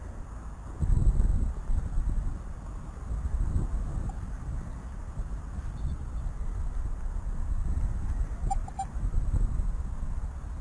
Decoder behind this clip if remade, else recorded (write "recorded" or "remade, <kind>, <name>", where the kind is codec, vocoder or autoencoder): recorded